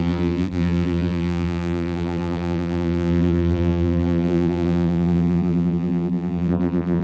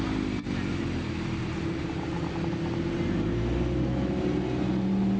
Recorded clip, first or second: second